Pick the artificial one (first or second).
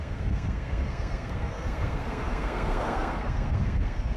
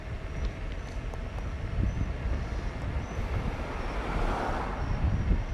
first